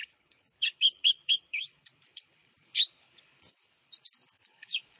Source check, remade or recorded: remade